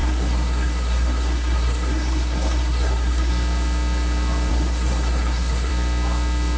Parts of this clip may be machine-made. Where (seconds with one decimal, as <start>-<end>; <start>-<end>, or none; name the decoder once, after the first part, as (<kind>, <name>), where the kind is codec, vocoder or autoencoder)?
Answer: 0.0-3.3 (codec, SNAC); 4.5-5.7